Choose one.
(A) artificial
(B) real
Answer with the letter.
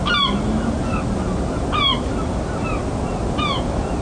B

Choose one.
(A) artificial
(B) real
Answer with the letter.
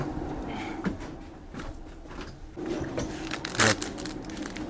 B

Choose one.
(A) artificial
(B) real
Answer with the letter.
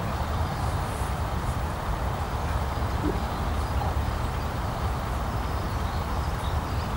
A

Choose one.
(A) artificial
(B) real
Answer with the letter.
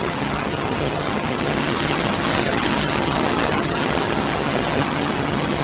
A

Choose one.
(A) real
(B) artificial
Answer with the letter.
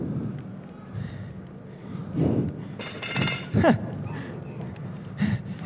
A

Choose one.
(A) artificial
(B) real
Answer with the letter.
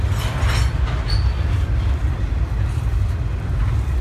B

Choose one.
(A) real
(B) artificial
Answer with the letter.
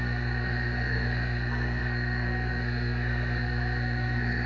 B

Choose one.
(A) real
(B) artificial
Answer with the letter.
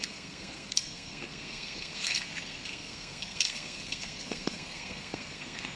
B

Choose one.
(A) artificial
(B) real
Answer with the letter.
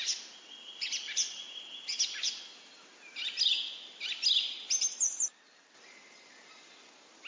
B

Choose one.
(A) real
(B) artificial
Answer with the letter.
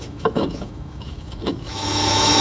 B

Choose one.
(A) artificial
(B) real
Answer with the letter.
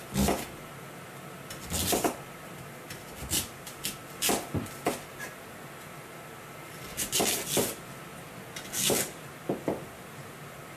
B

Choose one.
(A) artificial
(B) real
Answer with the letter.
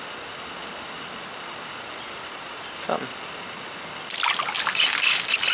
B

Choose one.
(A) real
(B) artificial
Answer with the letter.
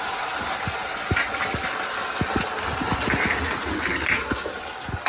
A